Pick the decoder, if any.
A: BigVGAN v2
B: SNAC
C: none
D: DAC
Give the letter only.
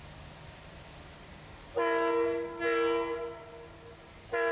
C